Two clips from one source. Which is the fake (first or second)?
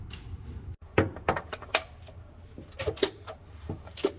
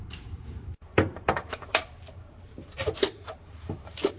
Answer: second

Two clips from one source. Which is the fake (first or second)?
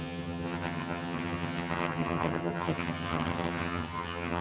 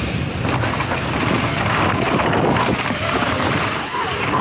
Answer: first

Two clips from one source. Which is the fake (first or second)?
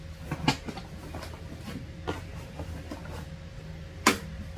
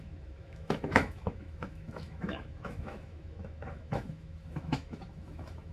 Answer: second